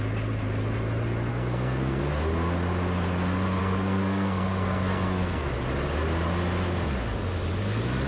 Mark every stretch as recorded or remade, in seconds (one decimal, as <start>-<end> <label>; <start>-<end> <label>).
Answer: 0.0-1.3 recorded; 1.3-2.0 remade; 2.0-3.6 recorded; 3.6-5.5 remade; 5.5-8.1 recorded